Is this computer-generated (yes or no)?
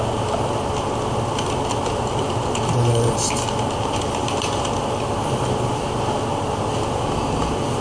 no